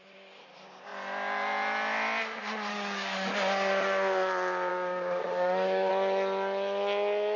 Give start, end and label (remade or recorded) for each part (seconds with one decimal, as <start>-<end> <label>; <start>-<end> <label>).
0.0-2.7 recorded; 2.7-3.3 remade; 3.3-4.7 recorded; 4.7-5.9 remade; 5.9-7.4 recorded